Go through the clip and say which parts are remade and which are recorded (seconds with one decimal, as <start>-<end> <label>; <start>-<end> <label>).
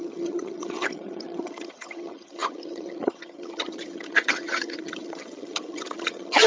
0.0-6.5 remade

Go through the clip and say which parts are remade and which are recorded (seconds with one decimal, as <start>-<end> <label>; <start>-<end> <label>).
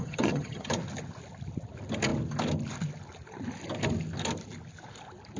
0.0-0.7 remade; 0.7-5.4 recorded